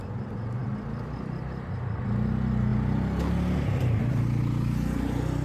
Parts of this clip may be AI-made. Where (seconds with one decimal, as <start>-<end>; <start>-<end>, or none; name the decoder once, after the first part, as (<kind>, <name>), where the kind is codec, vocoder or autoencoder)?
0.6-2.0 (vocoder, BigVGAN v2)